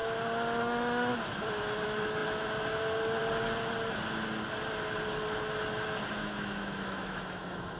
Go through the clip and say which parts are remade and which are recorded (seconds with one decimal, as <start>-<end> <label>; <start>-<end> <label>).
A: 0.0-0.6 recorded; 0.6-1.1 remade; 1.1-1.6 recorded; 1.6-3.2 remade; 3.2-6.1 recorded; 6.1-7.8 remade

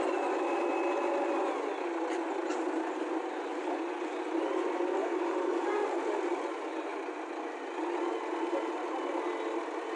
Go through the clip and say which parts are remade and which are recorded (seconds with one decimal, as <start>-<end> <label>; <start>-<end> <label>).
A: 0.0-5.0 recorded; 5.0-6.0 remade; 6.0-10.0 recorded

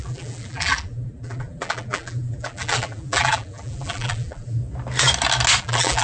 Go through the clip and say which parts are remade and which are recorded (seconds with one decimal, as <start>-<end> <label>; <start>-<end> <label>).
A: 0.0-4.6 remade; 4.6-5.6 recorded; 5.6-6.0 remade